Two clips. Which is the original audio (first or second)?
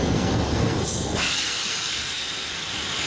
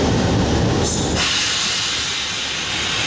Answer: second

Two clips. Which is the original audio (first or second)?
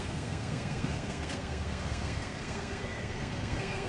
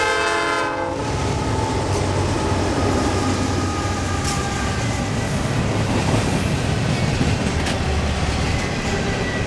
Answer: second